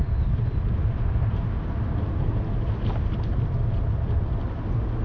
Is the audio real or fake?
real